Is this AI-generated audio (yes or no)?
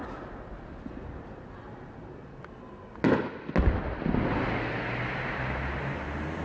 no